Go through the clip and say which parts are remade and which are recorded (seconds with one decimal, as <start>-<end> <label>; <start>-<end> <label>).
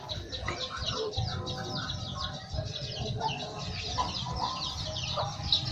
0.0-5.7 recorded